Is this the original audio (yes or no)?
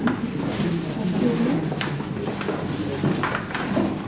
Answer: yes